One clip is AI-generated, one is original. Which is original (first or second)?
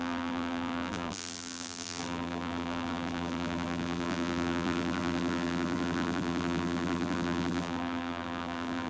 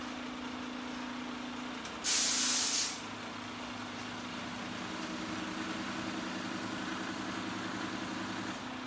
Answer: second